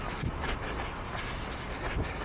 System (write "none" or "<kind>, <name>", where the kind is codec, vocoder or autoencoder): none